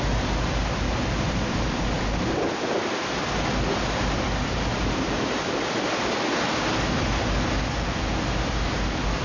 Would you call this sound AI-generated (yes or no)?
no